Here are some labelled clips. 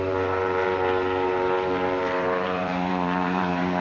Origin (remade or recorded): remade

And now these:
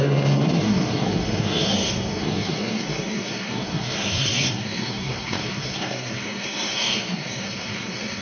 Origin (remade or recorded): remade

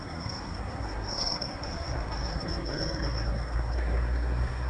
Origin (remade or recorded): remade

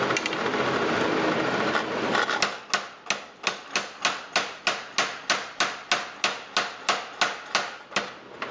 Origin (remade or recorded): recorded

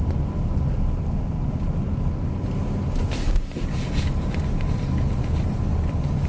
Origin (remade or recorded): recorded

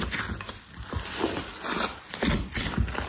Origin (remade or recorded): recorded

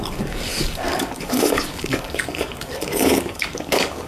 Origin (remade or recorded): remade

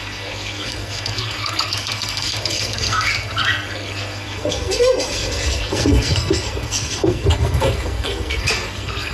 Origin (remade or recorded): remade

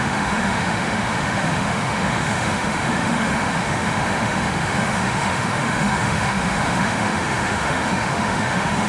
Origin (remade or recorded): remade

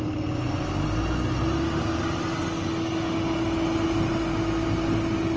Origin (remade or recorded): recorded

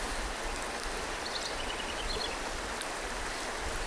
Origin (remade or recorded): recorded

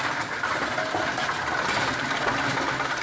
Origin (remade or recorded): recorded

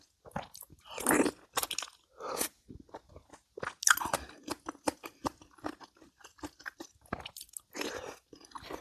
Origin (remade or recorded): recorded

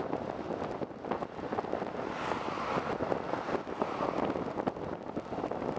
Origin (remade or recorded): recorded